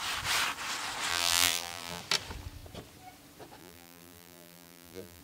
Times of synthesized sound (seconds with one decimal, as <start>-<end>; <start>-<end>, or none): 1.1-2.0; 3.6-5.2